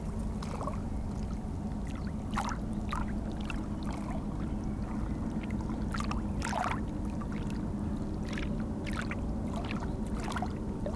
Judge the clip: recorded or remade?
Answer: recorded